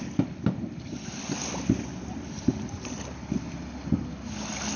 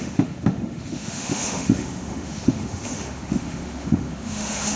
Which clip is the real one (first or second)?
first